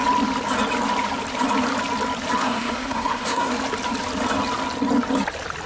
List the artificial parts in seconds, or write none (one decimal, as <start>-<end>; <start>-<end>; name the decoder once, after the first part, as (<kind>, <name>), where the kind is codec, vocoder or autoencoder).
2.4-3.5 (codec, SNAC)